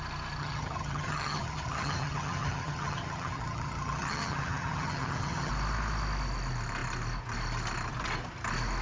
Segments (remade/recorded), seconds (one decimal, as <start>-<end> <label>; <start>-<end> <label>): 0.0-0.4 recorded; 0.4-5.5 remade; 5.5-8.8 recorded